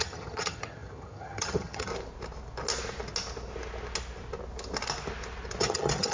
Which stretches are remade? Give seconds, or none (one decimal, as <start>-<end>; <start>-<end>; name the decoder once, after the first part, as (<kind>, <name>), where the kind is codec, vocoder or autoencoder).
0.0-1.9 (vocoder, HiFi-GAN); 5.6-6.1